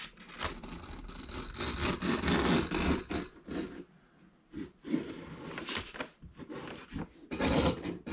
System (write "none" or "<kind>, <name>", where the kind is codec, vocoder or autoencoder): none